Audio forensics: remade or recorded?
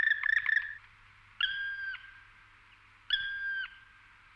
recorded